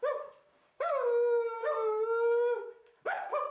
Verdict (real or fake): fake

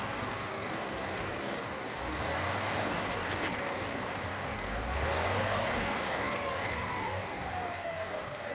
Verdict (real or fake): fake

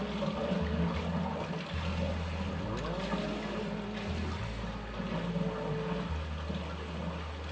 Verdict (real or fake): real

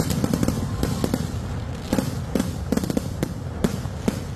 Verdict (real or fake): real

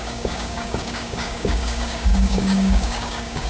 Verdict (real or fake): fake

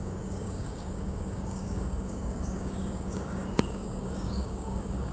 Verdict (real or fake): fake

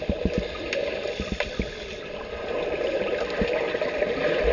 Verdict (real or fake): real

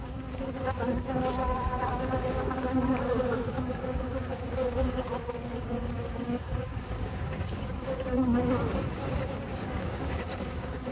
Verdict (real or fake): fake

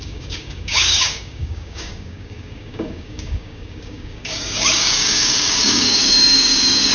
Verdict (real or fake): fake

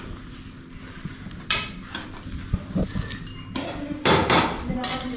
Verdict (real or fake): real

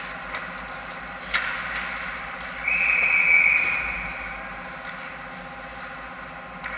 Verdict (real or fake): real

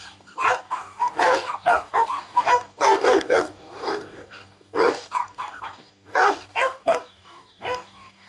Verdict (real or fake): fake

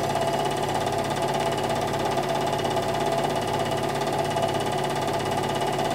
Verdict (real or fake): real